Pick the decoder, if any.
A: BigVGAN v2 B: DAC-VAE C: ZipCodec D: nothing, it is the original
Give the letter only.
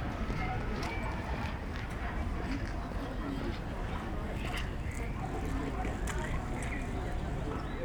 A